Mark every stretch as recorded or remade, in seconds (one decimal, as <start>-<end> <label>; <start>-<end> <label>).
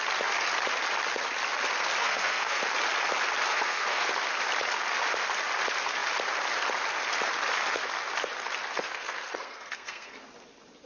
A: 0.0-2.0 recorded; 2.0-2.6 remade; 2.6-3.5 recorded; 3.5-4.1 remade; 4.1-8.8 recorded; 8.8-10.2 remade; 10.2-10.9 recorded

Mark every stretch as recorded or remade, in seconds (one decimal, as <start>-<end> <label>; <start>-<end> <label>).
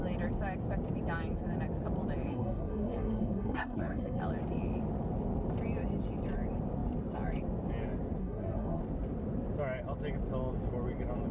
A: 0.0-2.3 recorded; 2.3-4.2 remade; 4.2-8.2 recorded; 8.2-8.8 remade; 8.8-11.3 recorded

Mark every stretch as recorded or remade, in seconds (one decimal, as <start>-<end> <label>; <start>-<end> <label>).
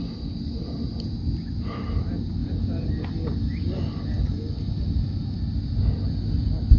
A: 0.0-6.8 recorded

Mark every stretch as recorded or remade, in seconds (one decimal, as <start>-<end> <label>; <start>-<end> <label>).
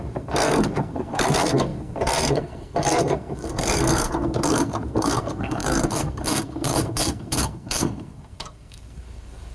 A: 0.0-9.5 remade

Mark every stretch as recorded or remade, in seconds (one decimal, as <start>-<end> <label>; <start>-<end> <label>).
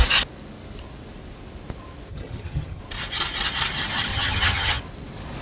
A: 0.0-2.1 recorded; 2.1-2.8 remade; 2.8-4.1 recorded; 4.1-4.8 remade; 4.8-5.4 recorded